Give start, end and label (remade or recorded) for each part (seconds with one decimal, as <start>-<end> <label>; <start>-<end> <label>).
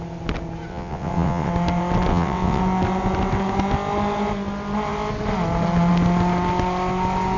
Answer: 0.0-0.7 recorded; 0.7-1.5 remade; 1.5-2.1 recorded; 2.1-2.6 remade; 2.6-7.4 recorded